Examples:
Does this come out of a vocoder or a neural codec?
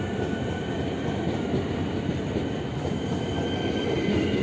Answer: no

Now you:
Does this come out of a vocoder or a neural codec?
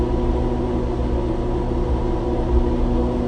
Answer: no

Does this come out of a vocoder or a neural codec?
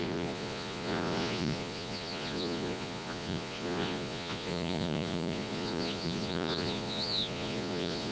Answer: yes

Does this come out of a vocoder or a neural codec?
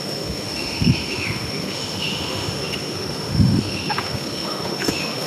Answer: yes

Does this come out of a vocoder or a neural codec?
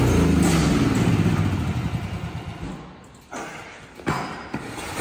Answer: no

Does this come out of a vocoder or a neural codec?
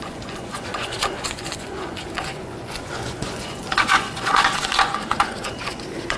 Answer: yes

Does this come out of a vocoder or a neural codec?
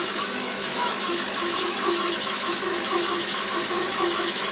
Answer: yes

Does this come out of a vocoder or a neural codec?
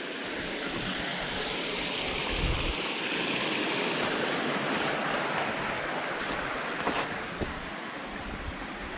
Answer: no